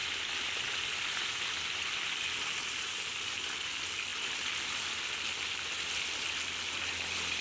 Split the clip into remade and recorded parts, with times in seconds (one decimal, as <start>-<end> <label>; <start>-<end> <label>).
0.0-7.4 recorded